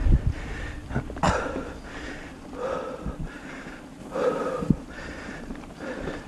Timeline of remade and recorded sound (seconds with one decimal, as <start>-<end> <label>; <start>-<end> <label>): 0.0-2.7 recorded; 2.7-4.0 remade; 4.0-4.7 recorded; 4.7-6.3 remade

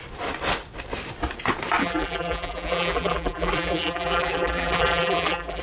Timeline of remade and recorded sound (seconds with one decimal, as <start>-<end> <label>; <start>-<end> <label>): 0.0-1.8 recorded; 1.8-5.6 remade

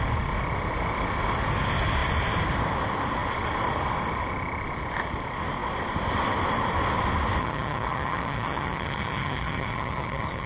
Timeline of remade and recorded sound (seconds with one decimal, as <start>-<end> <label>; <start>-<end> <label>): 0.0-7.4 recorded; 7.4-10.5 remade

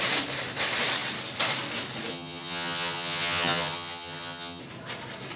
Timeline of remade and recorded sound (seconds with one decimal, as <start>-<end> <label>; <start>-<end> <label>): 0.0-2.1 recorded; 2.1-4.6 remade; 4.6-5.4 recorded

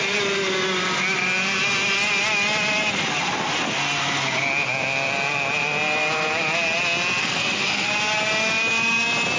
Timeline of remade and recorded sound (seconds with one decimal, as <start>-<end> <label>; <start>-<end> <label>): 0.0-7.2 recorded; 7.2-7.9 remade; 7.9-9.4 recorded